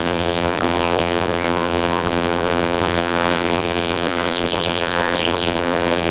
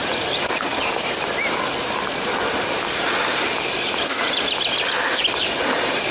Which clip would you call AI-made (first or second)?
first